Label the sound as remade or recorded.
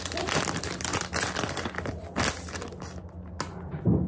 recorded